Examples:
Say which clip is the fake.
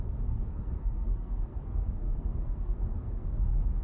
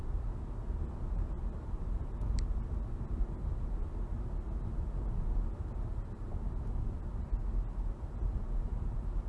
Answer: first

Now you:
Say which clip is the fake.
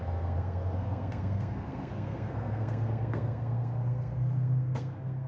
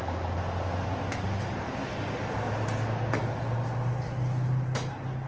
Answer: first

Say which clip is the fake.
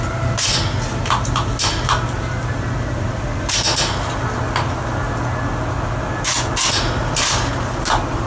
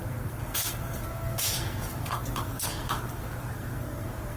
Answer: second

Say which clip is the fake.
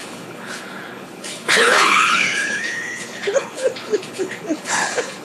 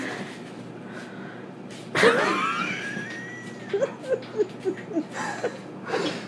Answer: first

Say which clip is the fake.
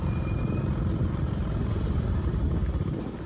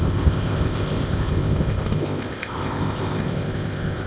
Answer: second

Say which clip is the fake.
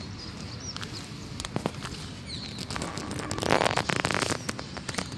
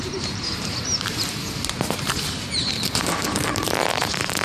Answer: second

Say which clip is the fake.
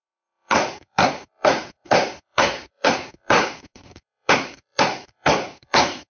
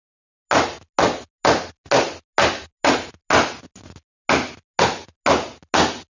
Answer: first